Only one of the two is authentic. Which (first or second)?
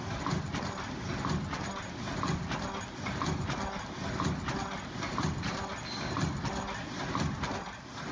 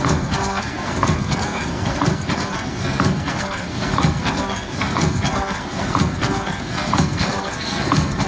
first